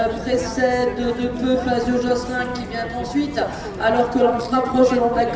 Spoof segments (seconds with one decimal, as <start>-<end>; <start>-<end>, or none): 4.3-4.9